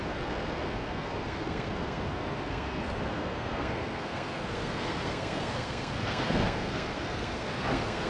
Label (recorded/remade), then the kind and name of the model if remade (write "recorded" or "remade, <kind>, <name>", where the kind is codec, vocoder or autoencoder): remade, codec, SNAC